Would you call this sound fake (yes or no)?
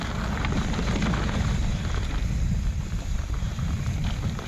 no